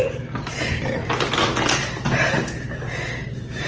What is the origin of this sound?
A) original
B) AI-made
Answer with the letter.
A